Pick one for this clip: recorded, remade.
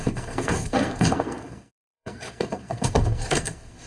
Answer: remade